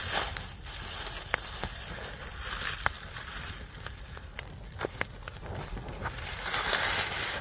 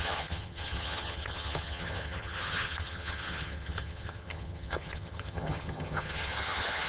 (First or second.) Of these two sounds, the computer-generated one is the second